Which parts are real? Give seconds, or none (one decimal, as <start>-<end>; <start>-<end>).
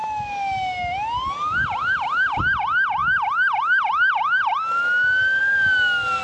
0.0-6.2